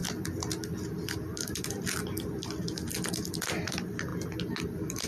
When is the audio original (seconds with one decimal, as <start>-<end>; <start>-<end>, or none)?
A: 0.0-5.1